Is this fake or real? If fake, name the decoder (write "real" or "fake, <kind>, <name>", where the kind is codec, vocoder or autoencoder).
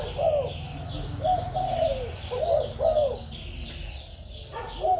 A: real